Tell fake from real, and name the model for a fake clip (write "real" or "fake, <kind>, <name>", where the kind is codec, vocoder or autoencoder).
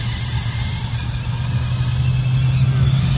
real